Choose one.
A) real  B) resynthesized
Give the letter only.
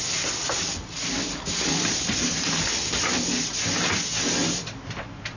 A